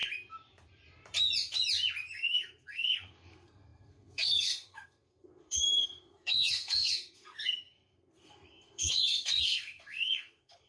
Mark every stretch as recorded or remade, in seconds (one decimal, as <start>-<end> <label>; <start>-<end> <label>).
0.0-2.1 recorded; 2.1-10.7 remade